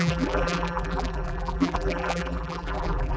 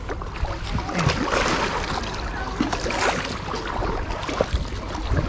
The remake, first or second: first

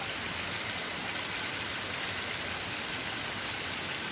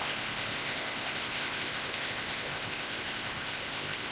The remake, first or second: second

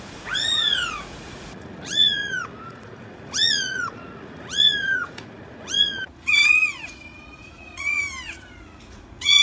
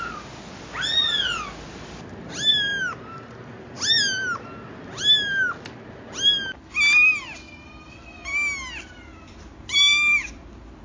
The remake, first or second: first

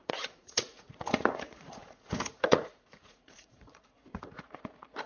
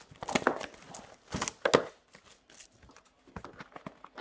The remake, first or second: first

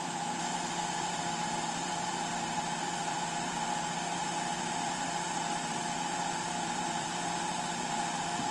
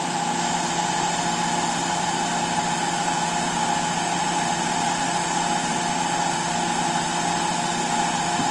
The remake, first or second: first